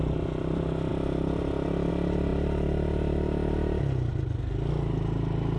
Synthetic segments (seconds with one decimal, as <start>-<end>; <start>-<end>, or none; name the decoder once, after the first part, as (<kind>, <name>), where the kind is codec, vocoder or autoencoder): none